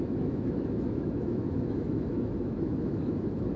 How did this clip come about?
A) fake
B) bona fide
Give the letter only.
A